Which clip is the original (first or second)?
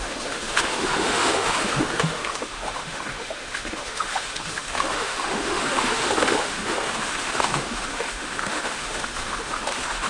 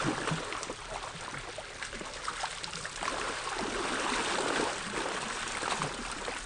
second